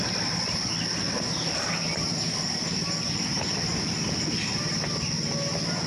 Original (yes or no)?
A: yes